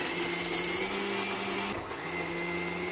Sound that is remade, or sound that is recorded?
recorded